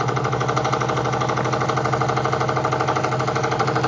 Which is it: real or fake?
real